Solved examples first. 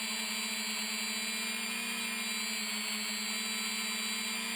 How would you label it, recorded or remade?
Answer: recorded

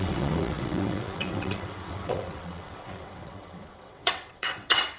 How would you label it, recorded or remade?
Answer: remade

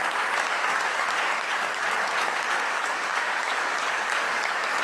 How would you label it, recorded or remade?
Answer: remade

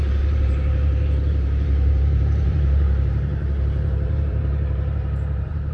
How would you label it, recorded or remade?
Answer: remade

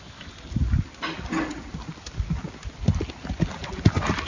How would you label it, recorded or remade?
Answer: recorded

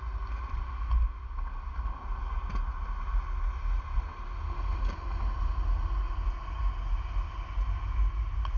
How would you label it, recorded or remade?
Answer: recorded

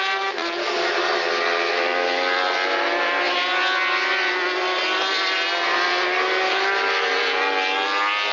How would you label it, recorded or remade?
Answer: recorded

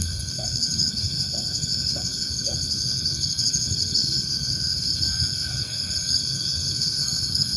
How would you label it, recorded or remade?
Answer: remade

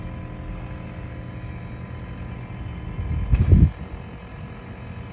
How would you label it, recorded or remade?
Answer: recorded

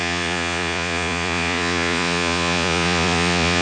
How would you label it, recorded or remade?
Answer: remade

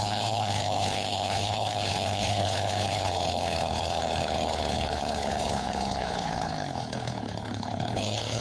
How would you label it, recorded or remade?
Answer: remade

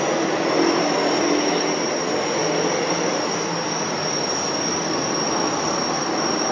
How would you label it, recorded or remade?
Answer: recorded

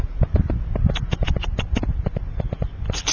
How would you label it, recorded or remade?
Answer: recorded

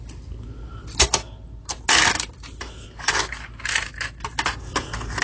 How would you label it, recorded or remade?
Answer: recorded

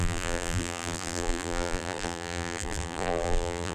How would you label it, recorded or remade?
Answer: remade